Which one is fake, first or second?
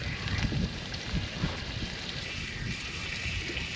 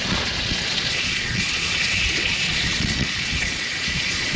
second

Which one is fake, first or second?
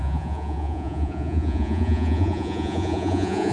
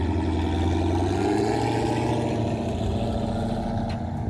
first